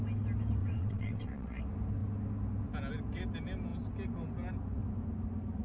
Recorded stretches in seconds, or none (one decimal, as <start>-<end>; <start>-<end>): 0.0-0.6; 1.6-5.6